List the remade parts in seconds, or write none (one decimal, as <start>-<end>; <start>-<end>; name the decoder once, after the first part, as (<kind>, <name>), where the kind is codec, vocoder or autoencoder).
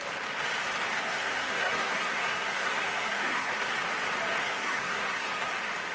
0.9-3.5 (codec, SNAC); 4.4-5.5